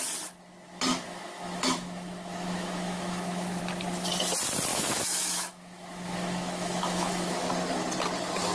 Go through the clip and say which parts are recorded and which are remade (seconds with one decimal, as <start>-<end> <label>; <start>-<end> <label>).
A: 0.0-0.9 recorded; 0.9-3.6 remade; 3.6-4.7 recorded; 4.7-7.5 remade; 7.5-8.5 recorded